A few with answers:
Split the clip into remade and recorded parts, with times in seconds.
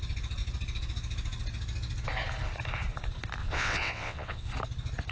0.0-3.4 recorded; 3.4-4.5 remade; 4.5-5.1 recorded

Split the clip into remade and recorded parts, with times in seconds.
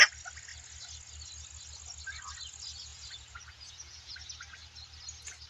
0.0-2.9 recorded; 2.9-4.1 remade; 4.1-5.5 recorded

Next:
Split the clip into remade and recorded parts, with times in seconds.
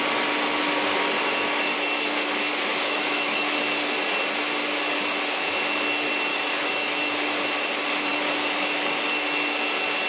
0.0-2.7 recorded; 2.7-3.6 remade; 3.6-6.3 recorded; 6.3-7.1 remade; 7.1-8.1 recorded; 8.1-9.1 remade; 9.1-10.1 recorded